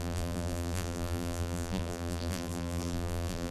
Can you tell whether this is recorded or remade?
remade